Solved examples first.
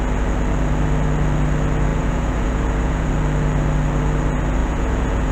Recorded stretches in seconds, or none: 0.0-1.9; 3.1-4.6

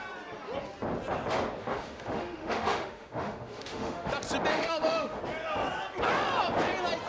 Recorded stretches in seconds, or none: 0.0-1.6; 4.1-4.5; 5.2-7.1

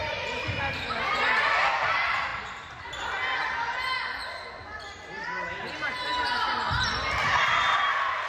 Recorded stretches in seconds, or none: 1.9-8.3

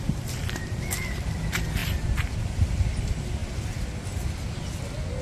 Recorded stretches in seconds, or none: 3.4-5.2

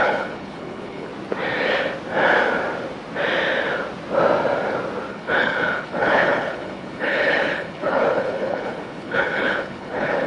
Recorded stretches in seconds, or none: 1.1-5.1